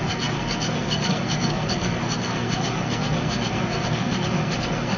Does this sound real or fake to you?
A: fake